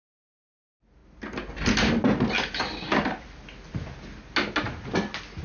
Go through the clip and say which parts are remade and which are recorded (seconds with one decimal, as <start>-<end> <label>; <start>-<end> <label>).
0.0-5.4 recorded